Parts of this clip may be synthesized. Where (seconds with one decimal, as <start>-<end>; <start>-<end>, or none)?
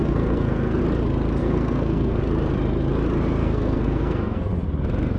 0.0-0.8; 1.4-2.2; 3.4-4.5